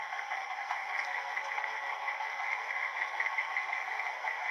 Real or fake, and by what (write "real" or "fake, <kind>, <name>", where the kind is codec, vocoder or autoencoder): fake, codec, SNAC